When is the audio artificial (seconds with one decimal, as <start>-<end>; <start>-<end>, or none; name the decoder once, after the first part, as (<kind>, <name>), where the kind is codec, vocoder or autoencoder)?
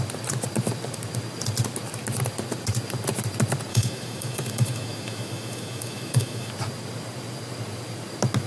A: 3.7-6.5 (autoencoder, DAC-VAE)